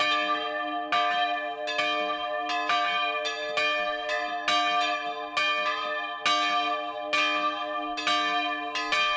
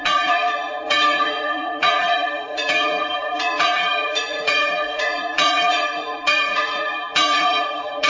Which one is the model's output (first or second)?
second